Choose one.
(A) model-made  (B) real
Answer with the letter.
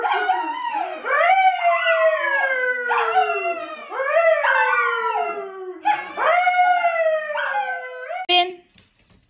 B